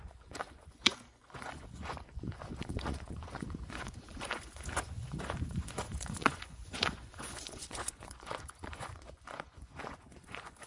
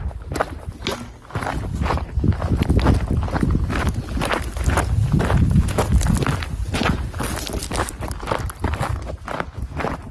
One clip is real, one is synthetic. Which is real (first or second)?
second